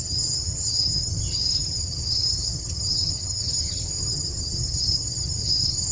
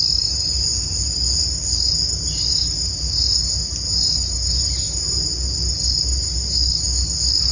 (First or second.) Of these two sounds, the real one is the second